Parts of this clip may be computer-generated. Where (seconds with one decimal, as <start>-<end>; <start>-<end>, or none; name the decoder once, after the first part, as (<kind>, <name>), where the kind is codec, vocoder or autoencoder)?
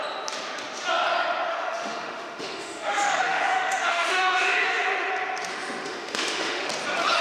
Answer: 1.5-5.1 (autoencoder, DAC-VAE); 5.5-6.7